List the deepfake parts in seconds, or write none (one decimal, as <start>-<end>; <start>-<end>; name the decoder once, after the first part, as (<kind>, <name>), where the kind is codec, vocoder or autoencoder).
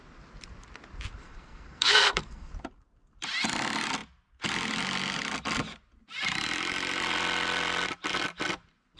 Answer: 1.2-2.5 (codec, SNAC)